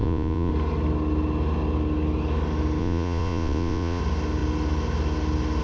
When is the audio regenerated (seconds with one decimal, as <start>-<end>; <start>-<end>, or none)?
0.0-0.5; 2.8-4.0